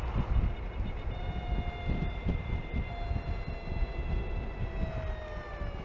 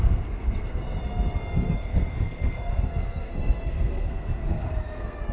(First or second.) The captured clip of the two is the first